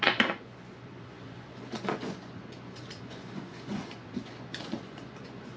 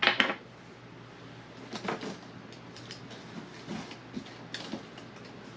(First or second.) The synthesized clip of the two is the first